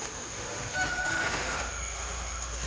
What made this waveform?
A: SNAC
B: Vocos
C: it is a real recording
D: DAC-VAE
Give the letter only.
D